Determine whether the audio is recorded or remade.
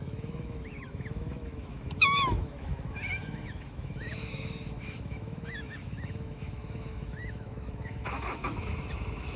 remade